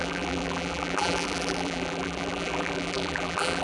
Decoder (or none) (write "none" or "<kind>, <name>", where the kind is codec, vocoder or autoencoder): vocoder, BigVGAN v2